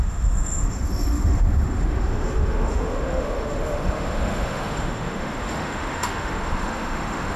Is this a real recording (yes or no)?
no